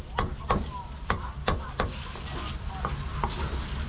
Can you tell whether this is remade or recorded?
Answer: recorded